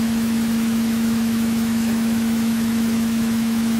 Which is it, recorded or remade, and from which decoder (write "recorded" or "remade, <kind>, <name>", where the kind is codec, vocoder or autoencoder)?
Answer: remade, autoencoder, DAC-VAE